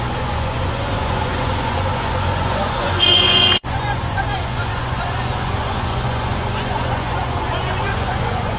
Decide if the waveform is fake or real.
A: fake